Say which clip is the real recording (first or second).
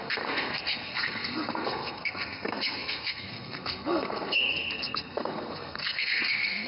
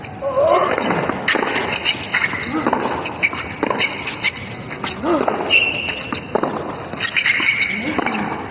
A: second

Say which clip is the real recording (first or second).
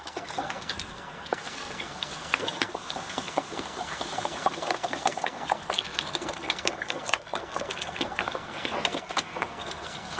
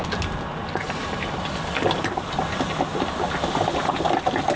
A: second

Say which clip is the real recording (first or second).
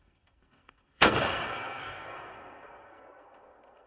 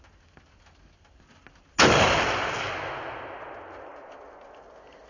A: second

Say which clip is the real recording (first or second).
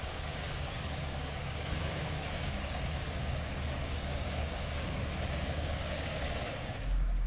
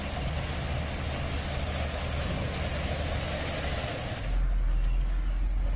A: second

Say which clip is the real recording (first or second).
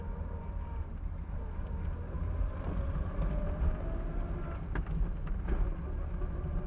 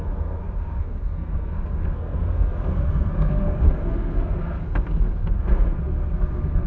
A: first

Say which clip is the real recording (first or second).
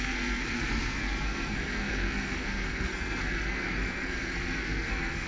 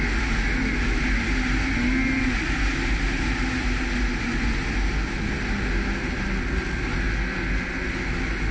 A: second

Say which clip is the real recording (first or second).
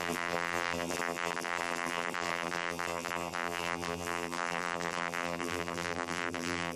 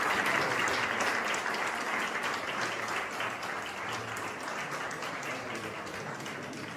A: second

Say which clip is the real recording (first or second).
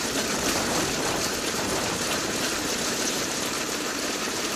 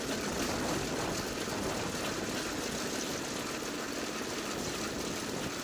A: second